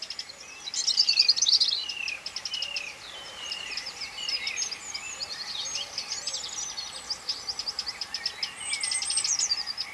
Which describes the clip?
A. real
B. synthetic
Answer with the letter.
A